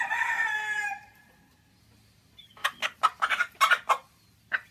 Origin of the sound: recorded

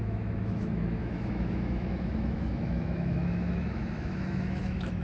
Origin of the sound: remade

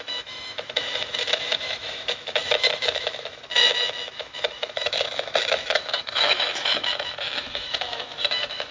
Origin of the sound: remade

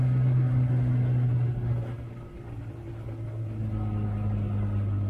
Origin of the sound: recorded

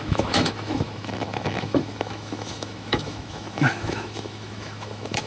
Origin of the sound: remade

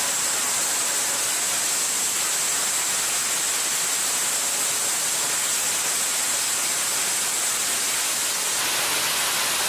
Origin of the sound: recorded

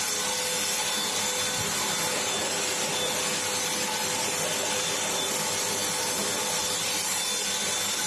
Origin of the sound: recorded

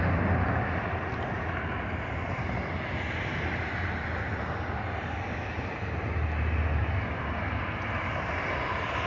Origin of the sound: recorded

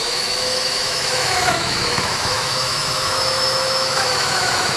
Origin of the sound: remade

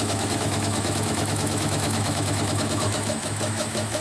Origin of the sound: remade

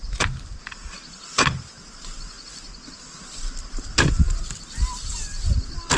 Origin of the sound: recorded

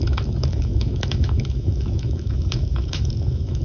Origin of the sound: remade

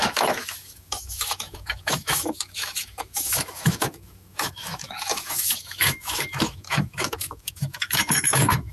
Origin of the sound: remade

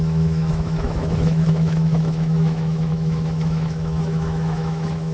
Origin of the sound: remade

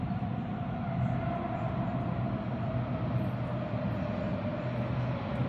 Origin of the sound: recorded